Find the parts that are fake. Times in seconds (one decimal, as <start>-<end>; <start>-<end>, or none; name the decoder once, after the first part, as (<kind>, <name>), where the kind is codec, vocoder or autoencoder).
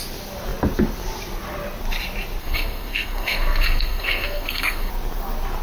2.4-4.9 (codec, SNAC)